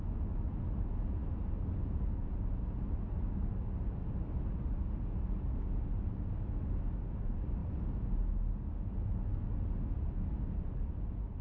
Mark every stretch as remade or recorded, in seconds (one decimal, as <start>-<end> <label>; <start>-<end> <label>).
0.0-11.4 recorded